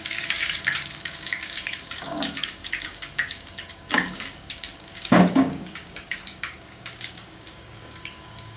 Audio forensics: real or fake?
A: fake